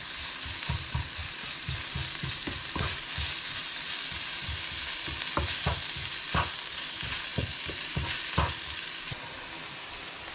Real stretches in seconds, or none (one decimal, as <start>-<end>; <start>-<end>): 0.0-10.3